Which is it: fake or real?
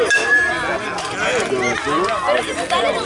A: real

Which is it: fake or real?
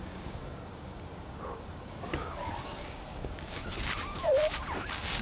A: fake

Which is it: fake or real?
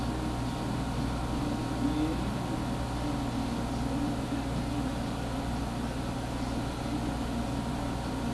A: real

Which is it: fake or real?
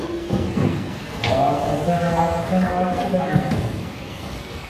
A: fake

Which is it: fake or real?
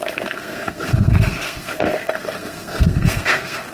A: fake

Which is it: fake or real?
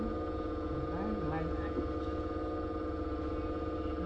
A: real